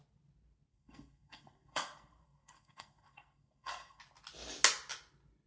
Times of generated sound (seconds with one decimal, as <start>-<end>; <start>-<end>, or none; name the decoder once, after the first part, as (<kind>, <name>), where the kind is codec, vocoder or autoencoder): 0.7-4.0 (codec, SNAC)